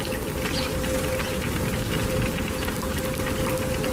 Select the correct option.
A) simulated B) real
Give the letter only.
B